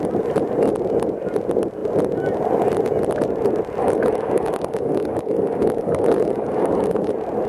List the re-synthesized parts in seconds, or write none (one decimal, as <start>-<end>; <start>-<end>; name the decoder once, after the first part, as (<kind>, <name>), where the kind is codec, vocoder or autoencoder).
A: 3.8-7.1 (codec, DAC)